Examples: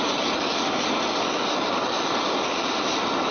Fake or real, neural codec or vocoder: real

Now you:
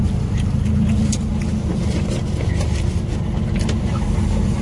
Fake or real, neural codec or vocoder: real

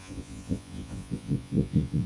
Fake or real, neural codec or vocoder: fake, vocoder, Vocos